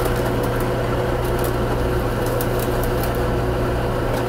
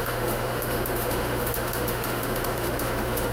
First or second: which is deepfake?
second